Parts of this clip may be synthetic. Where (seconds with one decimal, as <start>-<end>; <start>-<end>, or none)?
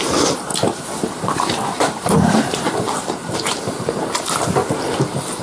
0.0-4.6